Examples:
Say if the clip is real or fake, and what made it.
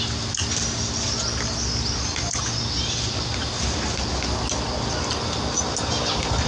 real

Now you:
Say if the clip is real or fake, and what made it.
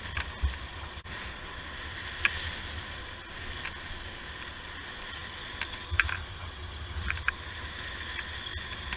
real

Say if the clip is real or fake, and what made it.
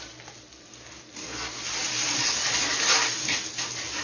real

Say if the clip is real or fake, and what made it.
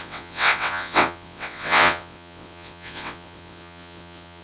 fake, vocoder, WaveNeXt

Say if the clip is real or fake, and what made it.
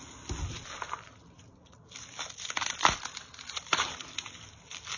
real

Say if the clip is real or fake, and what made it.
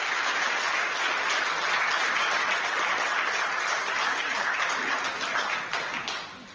real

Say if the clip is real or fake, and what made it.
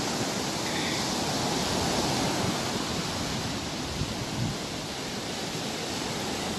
real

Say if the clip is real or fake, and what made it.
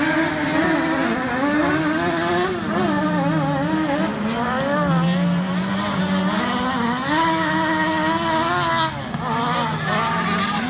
real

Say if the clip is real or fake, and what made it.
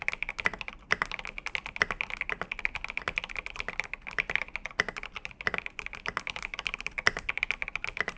real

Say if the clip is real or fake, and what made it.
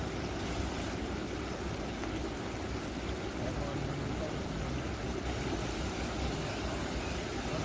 real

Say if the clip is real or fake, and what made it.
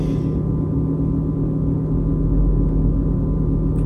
real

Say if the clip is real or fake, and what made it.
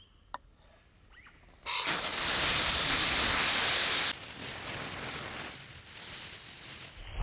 real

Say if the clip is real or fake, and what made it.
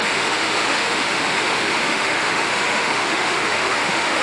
fake, autoencoder, DAC-VAE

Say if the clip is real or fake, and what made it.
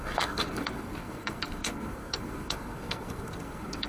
fake, codec, SNAC